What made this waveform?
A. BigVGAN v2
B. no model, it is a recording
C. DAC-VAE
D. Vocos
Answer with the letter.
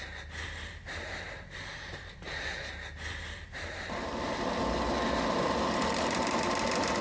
B